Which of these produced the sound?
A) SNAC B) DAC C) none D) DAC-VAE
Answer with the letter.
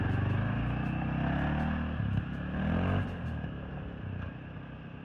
C